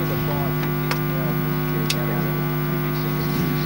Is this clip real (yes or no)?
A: yes